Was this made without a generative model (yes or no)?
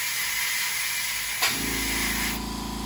yes